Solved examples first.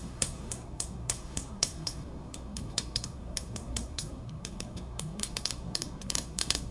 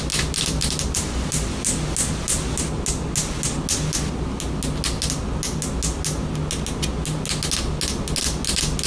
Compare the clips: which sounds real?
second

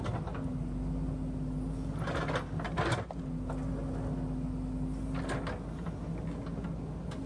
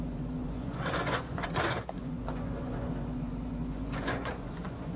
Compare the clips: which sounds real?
first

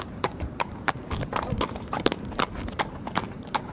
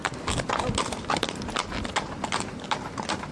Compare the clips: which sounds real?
second